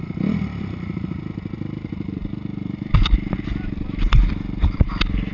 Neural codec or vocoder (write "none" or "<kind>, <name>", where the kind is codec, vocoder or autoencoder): vocoder, BigVGAN v2